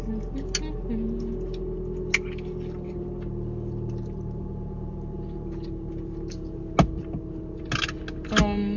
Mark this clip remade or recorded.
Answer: recorded